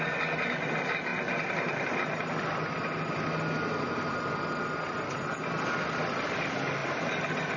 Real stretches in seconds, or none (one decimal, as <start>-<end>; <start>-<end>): 0.0-7.6